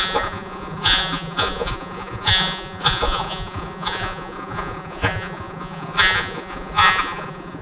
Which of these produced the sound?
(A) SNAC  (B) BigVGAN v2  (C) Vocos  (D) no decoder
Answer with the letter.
C